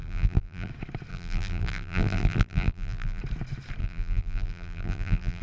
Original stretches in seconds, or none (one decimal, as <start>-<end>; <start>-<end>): 0.7-1.1; 3.2-3.8